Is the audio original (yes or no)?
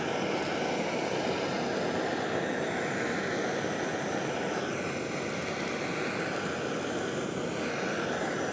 yes